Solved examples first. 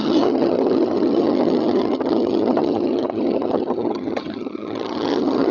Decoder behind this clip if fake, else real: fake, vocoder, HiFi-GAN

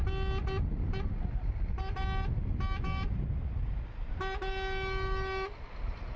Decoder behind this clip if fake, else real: real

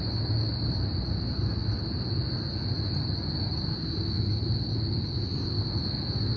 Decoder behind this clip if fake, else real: real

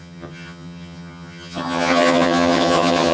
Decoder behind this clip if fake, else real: fake, vocoder, HiFi-GAN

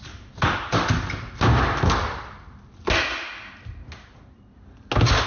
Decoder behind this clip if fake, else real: real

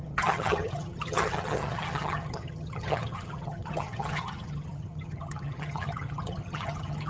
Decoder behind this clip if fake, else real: fake, vocoder, HiFi-GAN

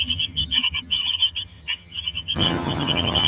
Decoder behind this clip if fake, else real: fake, vocoder, HiFi-GAN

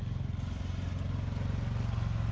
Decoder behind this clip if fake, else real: real